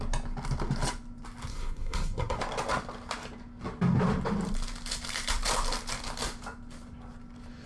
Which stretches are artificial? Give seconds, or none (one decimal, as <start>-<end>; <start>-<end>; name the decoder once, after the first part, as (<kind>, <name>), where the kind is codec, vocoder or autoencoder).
1.5-2.4 (codec, SNAC)